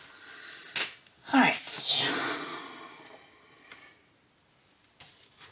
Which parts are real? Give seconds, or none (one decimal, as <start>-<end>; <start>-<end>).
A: 0.0-5.5